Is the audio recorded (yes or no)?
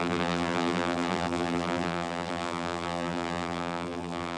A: no